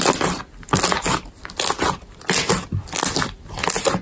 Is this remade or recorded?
recorded